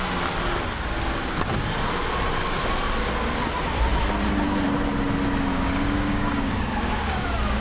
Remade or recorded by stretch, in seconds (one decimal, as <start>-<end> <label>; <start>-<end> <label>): 0.0-5.5 recorded; 5.5-7.6 remade